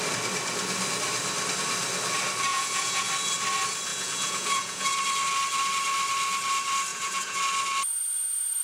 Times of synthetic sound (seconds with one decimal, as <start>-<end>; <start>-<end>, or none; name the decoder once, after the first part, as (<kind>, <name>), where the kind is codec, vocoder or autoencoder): 2.5-3.1 (vocoder, Vocos); 3.9-4.9; 6.9-7.4